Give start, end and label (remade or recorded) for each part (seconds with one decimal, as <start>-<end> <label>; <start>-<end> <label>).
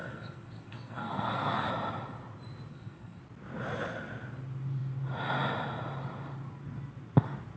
0.0-1.7 remade; 1.7-2.7 recorded; 2.7-3.2 remade; 3.2-7.6 recorded